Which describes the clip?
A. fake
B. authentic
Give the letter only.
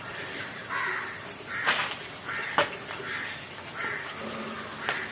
B